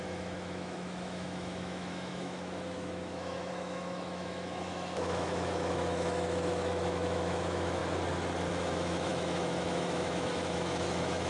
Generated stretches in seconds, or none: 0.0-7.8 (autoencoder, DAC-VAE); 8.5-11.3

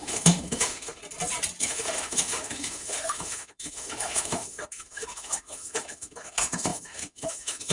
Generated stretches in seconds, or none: 0.0-1.0 (autoencoder, DAC-VAE); 1.6-7.7

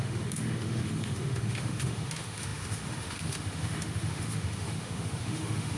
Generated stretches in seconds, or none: 0.0-5.8 (autoencoder, DAC-VAE)